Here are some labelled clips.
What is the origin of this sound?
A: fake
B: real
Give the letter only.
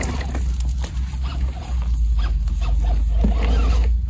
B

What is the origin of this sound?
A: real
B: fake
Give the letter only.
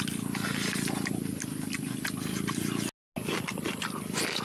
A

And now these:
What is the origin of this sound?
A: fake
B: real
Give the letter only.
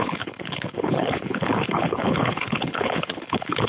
A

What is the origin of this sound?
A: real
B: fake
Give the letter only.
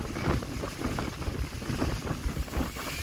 A